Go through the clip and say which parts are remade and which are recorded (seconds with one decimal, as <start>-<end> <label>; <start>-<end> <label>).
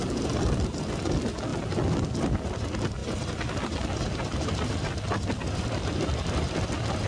0.0-7.1 recorded